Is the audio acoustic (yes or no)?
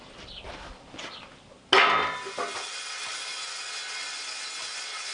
yes